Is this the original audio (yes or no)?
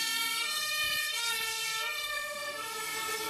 no